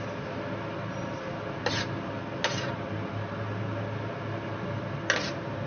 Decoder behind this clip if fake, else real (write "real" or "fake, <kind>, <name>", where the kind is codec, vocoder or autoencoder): real